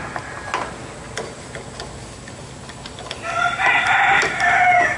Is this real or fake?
real